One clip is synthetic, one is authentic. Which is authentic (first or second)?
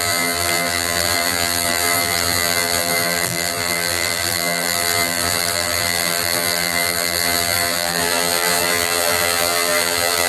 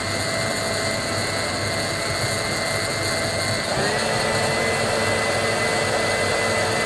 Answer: second